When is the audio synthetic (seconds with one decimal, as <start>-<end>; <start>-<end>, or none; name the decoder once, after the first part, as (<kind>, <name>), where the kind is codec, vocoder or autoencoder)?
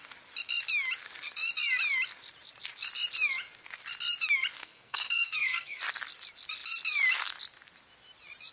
4.6-5.8 (codec, SNAC)